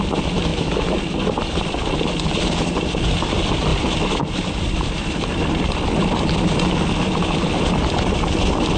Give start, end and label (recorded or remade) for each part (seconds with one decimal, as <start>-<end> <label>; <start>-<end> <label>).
0.0-0.5 recorded; 0.5-2.1 remade; 2.1-3.7 recorded; 3.7-5.9 remade; 5.9-8.8 recorded